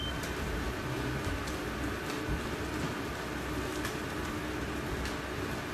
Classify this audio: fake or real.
real